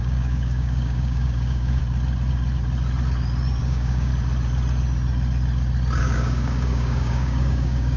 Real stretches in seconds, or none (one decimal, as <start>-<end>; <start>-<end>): 1.8-3.6; 4.1-6.0